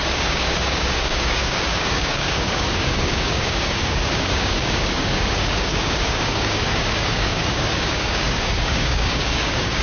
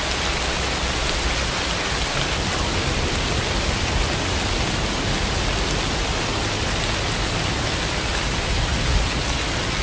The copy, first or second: first